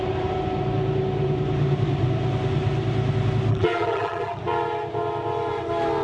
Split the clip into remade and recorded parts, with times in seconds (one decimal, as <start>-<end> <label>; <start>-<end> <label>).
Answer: 0.0-3.5 recorded; 3.5-4.4 remade; 4.4-6.0 recorded